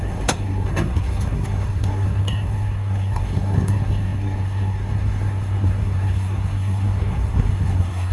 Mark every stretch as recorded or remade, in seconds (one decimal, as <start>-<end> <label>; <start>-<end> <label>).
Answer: 0.0-8.1 remade